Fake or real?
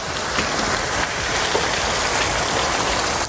real